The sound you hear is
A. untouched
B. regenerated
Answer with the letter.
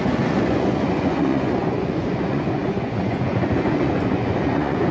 B